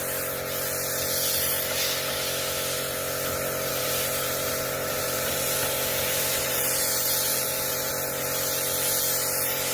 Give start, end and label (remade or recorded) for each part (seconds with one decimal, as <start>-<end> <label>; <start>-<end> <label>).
0.0-3.7 recorded; 3.7-7.9 remade; 7.9-9.7 recorded